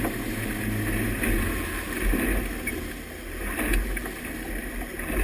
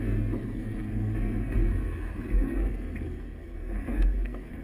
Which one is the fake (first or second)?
second